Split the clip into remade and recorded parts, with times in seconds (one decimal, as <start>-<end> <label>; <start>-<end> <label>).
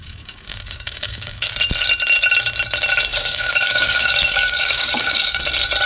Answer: 0.0-1.5 remade; 1.5-3.1 recorded; 3.1-5.4 remade; 5.4-5.9 recorded